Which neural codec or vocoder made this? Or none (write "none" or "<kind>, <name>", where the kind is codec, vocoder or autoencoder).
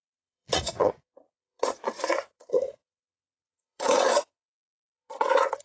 vocoder, Vocos